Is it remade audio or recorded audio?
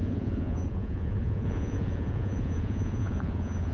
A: remade